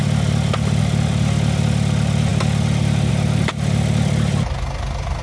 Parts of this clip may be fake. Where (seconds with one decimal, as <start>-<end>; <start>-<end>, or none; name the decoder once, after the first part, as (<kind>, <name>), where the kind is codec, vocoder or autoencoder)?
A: none